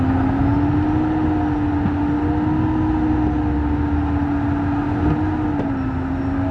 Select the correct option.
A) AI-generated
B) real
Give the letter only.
B